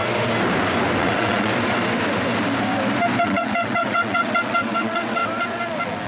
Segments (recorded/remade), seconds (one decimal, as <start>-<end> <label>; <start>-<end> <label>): 0.0-1.0 recorded; 1.0-1.5 remade; 1.5-3.2 recorded; 3.2-5.2 remade; 5.2-6.1 recorded

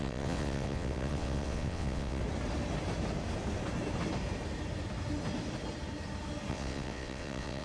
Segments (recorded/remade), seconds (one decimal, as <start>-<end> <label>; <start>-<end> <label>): 0.0-2.2 remade; 2.2-6.5 recorded; 6.5-7.6 remade